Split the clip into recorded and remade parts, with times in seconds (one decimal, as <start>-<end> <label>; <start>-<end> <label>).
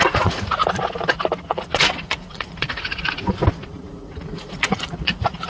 0.0-0.6 remade; 0.6-1.5 recorded; 1.5-3.4 remade; 3.4-3.9 recorded; 3.9-5.5 remade